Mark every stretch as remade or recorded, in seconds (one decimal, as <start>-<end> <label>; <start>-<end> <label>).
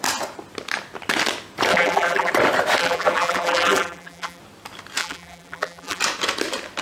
0.0-1.7 recorded; 1.7-2.3 remade; 2.3-2.8 recorded; 2.8-4.4 remade; 4.4-5.0 recorded; 5.0-6.0 remade; 6.0-6.8 recorded